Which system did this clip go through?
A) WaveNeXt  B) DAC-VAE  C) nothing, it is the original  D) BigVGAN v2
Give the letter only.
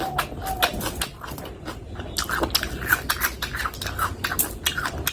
C